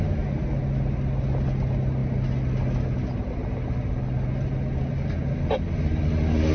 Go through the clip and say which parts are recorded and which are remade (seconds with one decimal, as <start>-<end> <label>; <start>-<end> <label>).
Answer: 0.0-6.5 recorded